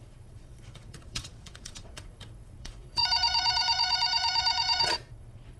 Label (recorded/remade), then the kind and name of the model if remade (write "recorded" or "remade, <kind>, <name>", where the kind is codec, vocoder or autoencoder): remade, vocoder, Vocos